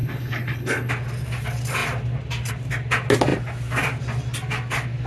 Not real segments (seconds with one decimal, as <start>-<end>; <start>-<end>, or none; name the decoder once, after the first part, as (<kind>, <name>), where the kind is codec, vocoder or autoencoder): 0.0-0.9 (codec, HILCodec)

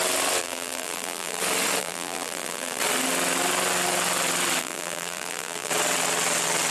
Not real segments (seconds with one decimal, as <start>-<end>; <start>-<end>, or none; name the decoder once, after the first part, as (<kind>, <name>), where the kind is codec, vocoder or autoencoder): 0.4-1.4 (vocoder, BigVGAN v2); 1.8-2.8; 4.6-5.7

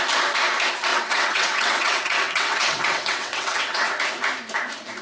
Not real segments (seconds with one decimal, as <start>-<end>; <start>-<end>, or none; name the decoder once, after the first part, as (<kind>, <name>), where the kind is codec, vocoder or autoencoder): 0.9-3.9 (vocoder, WaveNeXt)

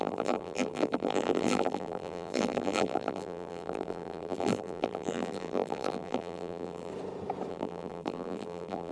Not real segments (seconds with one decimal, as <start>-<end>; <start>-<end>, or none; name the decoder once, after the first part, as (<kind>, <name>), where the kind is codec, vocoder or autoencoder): 0.0-6.9 (vocoder, BigVGAN v2); 7.5-8.9

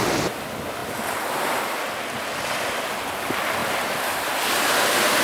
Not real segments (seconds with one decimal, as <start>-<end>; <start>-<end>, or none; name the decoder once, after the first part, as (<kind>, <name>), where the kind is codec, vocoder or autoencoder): none

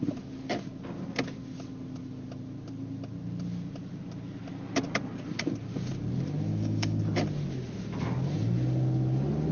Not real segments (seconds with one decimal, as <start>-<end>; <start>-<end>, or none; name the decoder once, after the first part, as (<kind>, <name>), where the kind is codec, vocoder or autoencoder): 6.5-7.0 (codec, DAC)

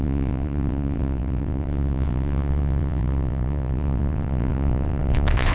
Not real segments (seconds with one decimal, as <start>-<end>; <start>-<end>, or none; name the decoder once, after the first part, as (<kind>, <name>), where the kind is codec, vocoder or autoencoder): 0.0-5.5 (vocoder, WaveNeXt)

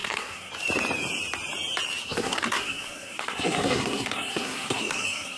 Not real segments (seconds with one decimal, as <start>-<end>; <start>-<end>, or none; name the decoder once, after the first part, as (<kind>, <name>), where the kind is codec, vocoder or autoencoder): 0.0-0.5 (codec, SNAC); 2.0-5.4